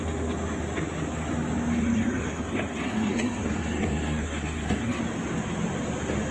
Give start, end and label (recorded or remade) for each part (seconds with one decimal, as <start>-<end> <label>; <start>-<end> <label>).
0.0-1.8 recorded; 1.8-5.0 remade; 5.0-6.3 recorded